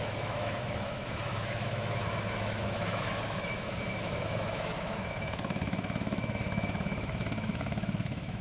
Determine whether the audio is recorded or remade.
remade